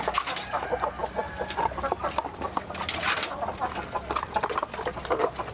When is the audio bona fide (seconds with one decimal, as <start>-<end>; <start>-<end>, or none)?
0.0-5.5